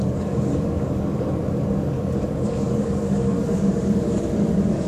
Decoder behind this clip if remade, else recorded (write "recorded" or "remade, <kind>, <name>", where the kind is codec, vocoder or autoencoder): remade, codec, DAC